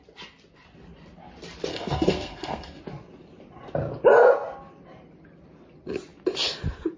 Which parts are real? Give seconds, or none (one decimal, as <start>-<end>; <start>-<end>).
0.0-1.7; 2.8-7.0